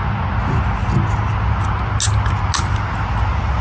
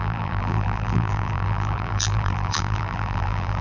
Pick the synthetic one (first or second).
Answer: second